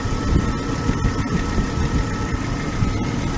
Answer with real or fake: real